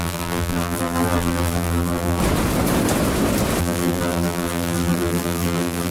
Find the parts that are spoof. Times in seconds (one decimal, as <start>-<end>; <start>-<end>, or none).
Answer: 0.0-2.2; 3.6-5.9